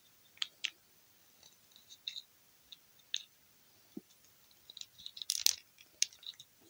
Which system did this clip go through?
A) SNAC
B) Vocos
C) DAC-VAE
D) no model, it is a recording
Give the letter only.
D